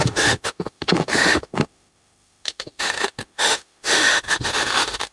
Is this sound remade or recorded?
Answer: remade